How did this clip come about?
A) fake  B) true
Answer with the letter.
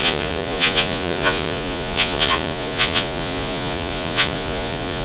A